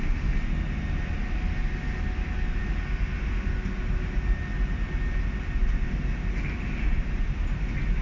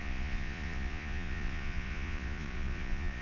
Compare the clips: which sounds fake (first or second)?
second